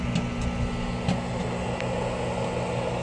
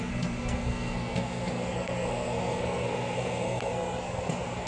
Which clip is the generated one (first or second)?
second